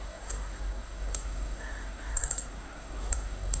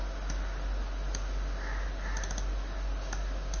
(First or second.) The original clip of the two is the second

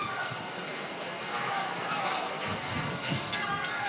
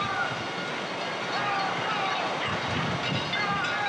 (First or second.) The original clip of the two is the second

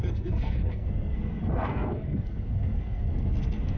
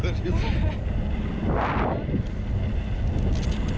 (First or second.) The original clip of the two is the second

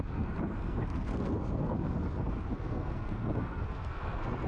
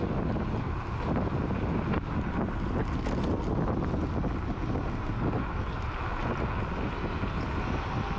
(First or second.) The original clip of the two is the second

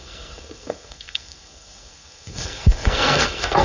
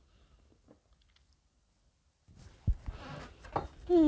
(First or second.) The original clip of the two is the second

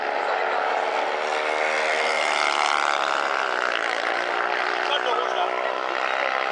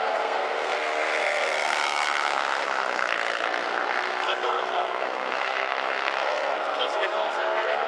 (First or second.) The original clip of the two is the first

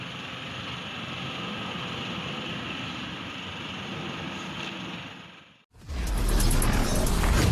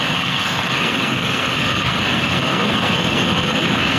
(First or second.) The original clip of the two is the first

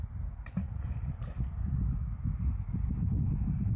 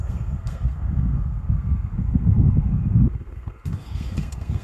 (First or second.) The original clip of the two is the first